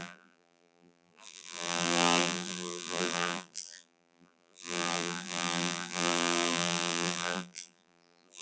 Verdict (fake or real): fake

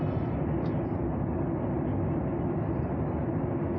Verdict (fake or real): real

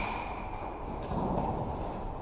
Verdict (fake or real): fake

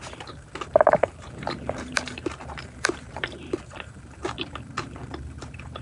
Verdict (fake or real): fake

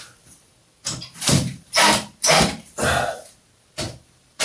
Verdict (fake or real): fake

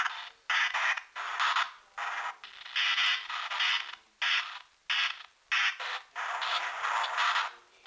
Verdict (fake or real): real